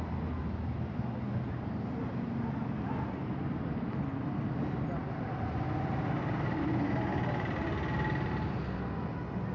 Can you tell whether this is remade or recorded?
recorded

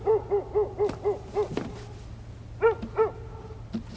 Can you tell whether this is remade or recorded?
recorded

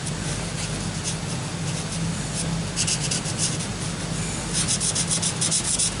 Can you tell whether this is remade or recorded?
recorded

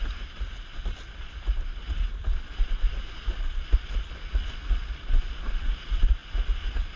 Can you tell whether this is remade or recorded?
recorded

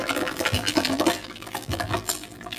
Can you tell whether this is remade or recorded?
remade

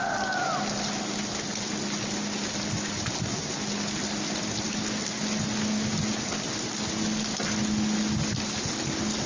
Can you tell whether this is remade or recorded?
recorded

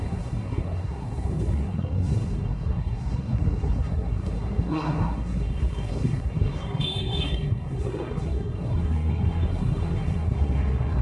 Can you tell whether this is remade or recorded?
remade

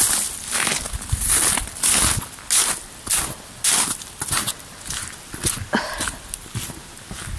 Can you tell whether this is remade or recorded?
recorded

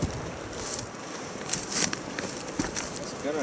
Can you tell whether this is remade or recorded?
recorded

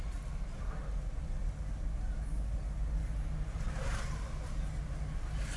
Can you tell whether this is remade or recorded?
recorded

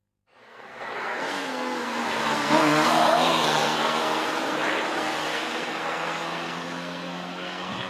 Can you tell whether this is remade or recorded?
remade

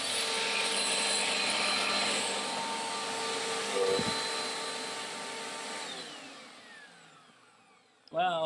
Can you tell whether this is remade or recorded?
recorded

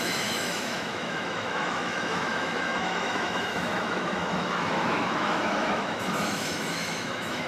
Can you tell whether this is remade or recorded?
remade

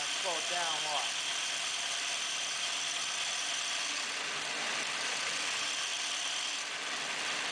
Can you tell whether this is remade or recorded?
recorded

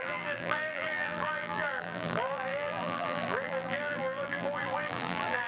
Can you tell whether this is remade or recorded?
remade